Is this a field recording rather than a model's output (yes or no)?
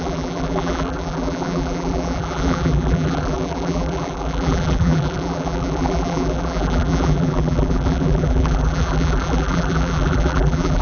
no